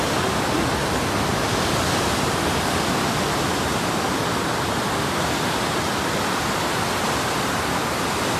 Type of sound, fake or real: real